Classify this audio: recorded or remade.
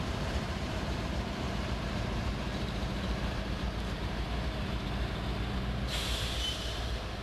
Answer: remade